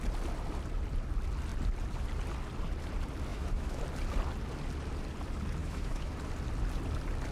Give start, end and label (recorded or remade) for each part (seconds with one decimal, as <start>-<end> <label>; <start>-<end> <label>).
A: 0.0-3.3 recorded; 3.3-3.8 remade; 3.8-5.6 recorded; 5.6-6.1 remade; 6.1-7.3 recorded